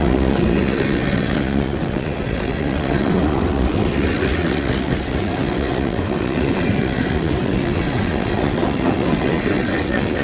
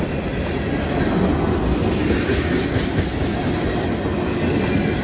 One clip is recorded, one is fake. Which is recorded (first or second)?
second